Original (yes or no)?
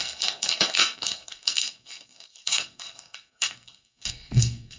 no